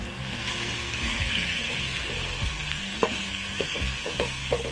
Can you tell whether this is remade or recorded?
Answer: remade